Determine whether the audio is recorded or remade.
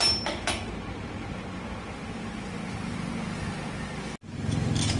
recorded